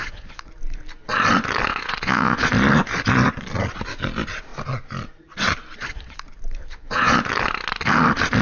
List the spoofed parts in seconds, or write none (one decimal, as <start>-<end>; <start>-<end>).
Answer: 0.0-0.5; 1.7-2.5; 6.6-7.2